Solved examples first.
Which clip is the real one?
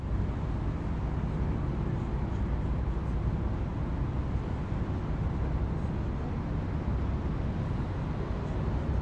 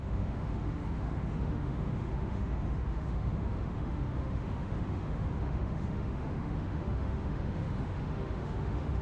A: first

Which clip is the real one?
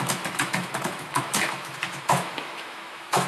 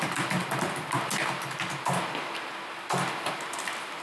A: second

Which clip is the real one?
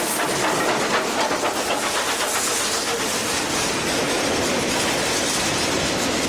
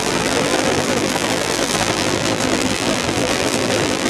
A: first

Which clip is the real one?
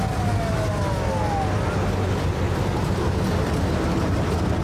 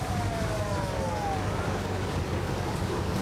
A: first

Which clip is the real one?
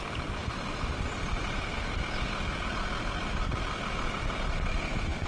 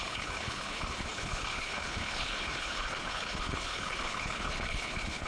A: first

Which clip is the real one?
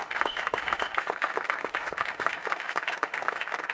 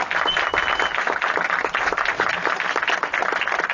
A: second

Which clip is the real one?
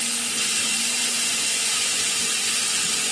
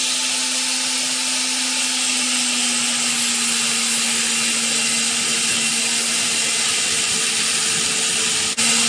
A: second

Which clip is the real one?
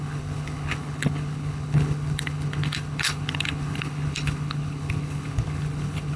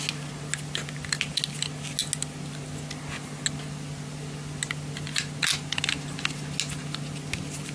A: second